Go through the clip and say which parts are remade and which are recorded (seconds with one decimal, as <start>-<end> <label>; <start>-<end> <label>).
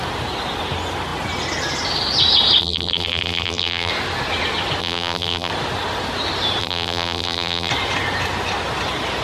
0.0-2.6 recorded; 2.6-3.9 remade; 3.9-4.8 recorded; 4.8-5.5 remade; 5.5-6.6 recorded; 6.6-7.7 remade; 7.7-9.2 recorded